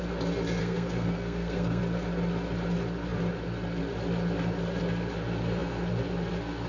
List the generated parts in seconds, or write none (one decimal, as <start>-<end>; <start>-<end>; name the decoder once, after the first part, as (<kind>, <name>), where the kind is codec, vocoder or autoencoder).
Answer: 0.6-1.8 (codec, SNAC)